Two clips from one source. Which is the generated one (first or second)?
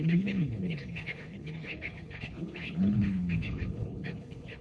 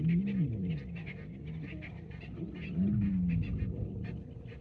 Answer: first